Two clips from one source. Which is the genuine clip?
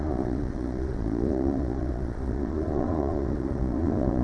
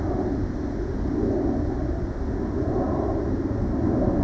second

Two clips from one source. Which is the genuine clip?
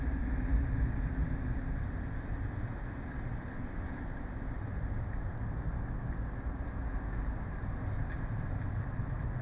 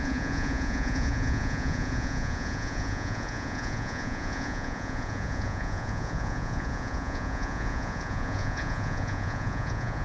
first